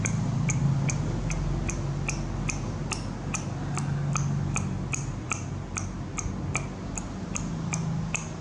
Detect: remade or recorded recorded